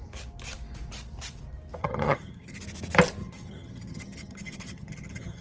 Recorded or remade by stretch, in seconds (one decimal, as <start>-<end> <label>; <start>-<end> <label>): 0.0-1.8 recorded; 1.8-2.6 remade; 2.6-3.2 recorded; 3.2-5.4 remade